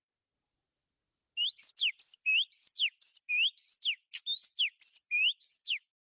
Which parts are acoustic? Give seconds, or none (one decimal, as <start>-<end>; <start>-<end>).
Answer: 0.0-5.0

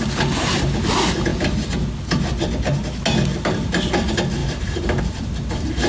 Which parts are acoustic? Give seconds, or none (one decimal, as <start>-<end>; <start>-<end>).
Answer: 0.0-4.4; 5.0-5.9

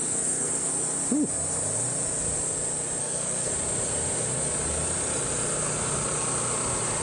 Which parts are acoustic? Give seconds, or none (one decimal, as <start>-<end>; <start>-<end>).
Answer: 0.7-3.0; 3.5-7.0

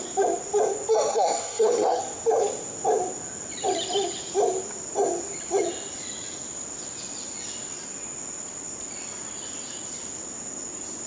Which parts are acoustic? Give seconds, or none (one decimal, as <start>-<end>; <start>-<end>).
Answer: 0.0-1.1; 2.0-11.1

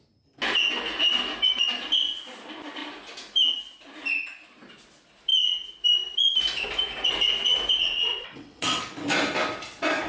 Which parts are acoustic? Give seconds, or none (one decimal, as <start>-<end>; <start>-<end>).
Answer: 0.0-7.8; 8.8-10.1

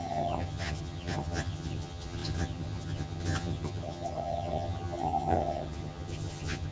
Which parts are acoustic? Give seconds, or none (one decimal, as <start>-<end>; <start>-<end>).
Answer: none